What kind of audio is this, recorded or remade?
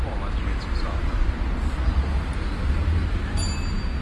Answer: recorded